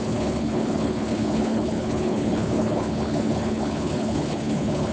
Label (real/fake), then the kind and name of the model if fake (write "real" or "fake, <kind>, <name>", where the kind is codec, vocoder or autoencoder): fake, codec, HILCodec